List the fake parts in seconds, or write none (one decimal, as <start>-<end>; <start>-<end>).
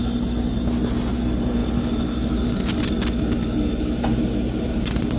none